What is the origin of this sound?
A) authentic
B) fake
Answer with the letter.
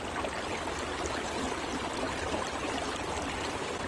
A